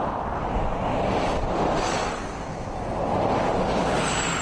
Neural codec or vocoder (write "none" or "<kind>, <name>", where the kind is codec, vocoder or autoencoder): none